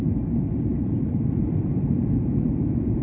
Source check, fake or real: fake